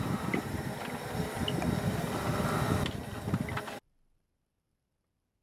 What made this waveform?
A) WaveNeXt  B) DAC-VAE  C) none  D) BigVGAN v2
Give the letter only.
C